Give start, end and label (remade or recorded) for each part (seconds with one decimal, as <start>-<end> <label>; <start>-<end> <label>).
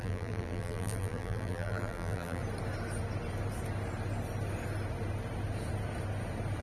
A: 0.0-2.4 remade; 2.4-6.6 recorded